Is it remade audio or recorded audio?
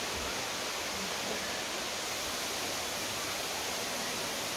remade